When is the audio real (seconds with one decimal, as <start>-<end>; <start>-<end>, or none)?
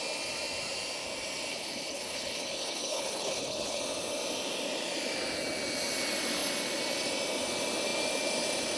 0.0-1.5; 3.8-8.8